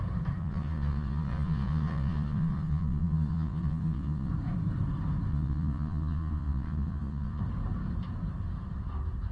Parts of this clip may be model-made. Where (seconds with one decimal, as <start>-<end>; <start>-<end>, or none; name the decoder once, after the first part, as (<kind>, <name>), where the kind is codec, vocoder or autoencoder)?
0.4-4.3 (vocoder, Vocos); 5.3-7.4